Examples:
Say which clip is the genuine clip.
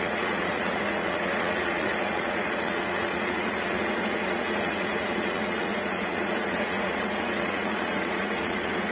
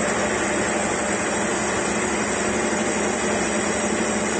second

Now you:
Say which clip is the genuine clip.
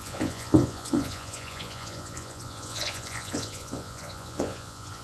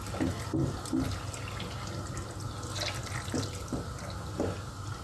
second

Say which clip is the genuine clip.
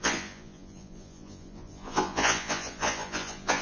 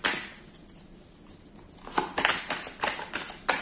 second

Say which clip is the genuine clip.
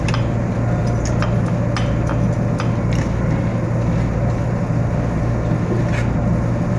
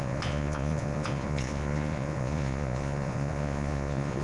first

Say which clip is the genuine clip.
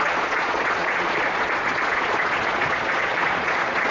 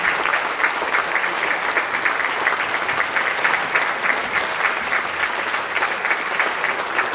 second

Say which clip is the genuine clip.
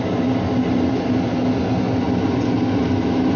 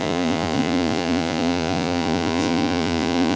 first